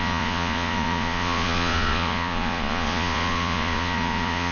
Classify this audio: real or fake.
fake